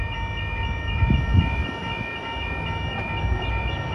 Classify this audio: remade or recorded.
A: recorded